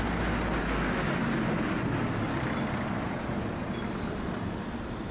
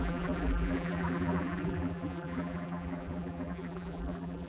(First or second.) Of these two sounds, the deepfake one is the second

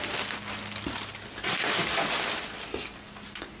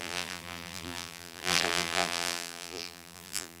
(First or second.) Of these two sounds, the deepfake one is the second